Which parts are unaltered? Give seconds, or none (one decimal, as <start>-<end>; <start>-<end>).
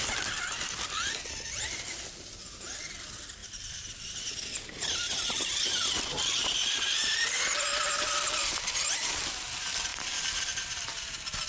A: 0.0-3.4; 7.4-11.5